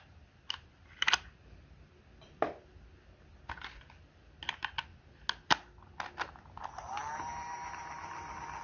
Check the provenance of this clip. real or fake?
real